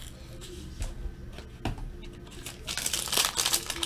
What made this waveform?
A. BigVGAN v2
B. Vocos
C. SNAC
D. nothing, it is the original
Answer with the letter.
D